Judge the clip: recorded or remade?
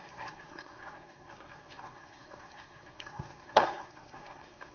remade